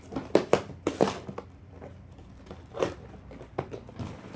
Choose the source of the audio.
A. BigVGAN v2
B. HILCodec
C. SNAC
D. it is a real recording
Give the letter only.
A